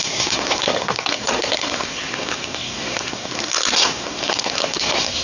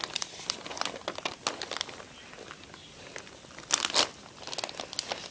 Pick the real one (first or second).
second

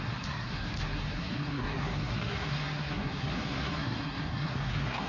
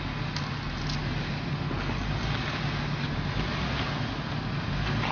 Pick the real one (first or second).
second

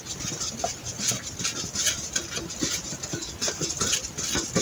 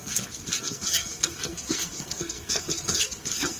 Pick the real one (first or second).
first